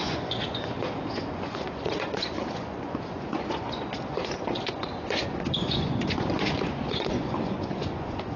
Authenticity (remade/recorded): remade